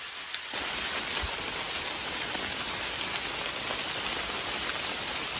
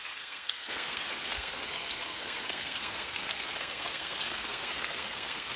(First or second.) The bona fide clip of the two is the first